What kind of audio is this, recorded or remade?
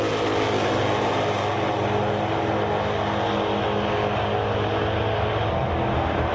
recorded